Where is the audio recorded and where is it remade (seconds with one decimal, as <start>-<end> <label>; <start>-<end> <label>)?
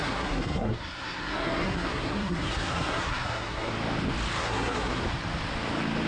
0.0-3.7 remade; 3.7-4.4 recorded; 4.4-5.0 remade; 5.0-6.1 recorded